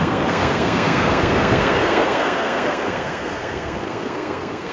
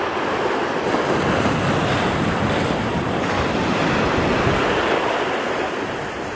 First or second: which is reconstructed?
first